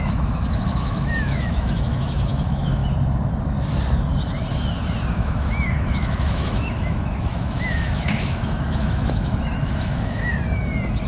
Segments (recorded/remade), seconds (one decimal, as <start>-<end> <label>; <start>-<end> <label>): 0.0-2.8 remade; 2.8-5.1 recorded; 5.1-10.3 remade; 10.3-11.1 recorded